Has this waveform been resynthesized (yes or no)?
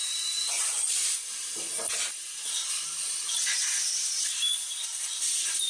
no